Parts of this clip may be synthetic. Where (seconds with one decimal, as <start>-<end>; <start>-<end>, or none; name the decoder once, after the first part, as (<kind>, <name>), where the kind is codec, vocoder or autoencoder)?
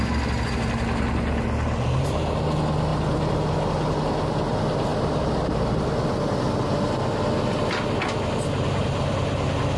none